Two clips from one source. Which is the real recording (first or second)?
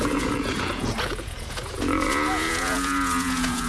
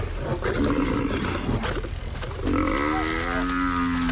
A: second